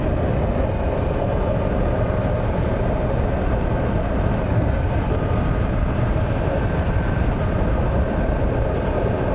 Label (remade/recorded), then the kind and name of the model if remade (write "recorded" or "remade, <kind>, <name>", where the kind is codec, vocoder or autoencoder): recorded